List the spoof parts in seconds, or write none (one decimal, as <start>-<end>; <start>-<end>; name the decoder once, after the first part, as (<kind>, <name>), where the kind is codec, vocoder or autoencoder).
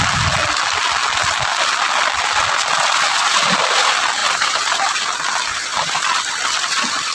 4.2-5.0 (vocoder, BigVGAN v2)